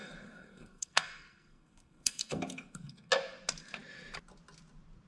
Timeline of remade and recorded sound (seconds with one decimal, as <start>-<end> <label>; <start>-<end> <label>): 0.0-3.1 remade; 3.1-5.1 recorded